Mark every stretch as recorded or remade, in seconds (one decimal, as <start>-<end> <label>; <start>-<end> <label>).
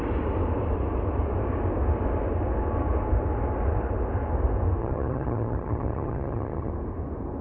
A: 0.0-4.8 recorded; 4.8-6.7 remade; 6.7-7.4 recorded